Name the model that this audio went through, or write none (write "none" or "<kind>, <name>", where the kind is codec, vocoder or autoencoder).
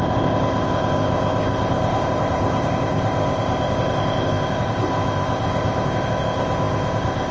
codec, ZipCodec